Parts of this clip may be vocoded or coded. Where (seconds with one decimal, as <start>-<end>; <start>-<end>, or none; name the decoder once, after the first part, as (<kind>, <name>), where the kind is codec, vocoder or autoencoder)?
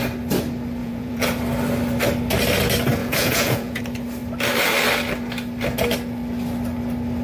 0.8-1.4 (vocoder, Vocos); 3.0-3.8